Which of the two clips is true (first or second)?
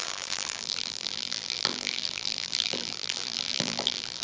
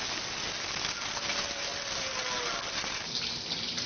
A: second